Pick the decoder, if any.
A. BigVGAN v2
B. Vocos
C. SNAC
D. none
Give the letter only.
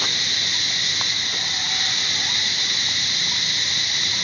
D